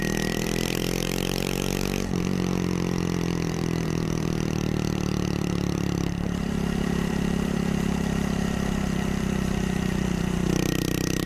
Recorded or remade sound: remade